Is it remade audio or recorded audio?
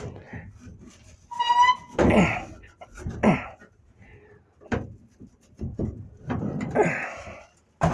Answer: recorded